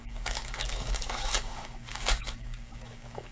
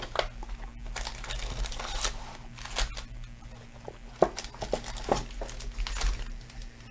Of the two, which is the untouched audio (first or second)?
second